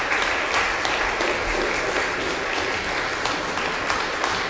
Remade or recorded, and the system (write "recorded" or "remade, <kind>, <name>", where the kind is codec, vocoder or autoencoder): recorded